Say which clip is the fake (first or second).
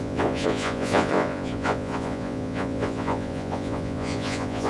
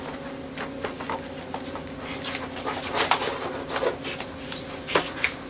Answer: first